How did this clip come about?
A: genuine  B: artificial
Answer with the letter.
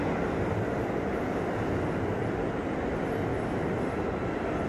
A